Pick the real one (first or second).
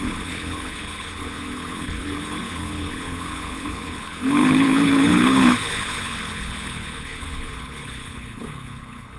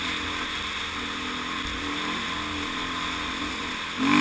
second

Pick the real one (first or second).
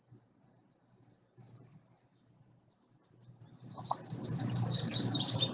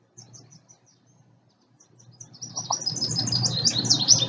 second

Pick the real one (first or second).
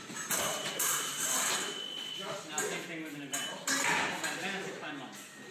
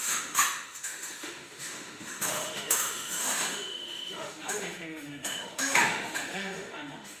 first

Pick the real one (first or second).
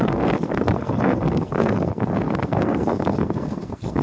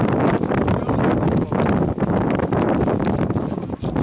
second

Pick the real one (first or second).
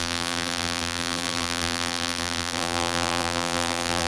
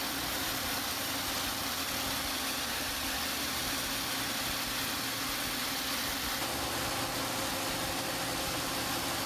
second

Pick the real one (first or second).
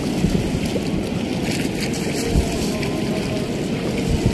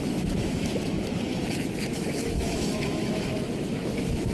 first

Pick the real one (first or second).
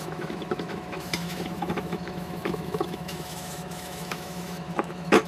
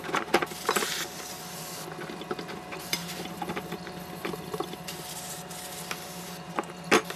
second